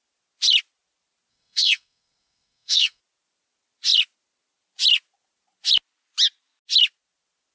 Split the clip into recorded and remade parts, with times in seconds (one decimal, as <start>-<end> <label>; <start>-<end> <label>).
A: 0.0-1.3 recorded; 1.3-3.0 remade; 3.0-7.5 recorded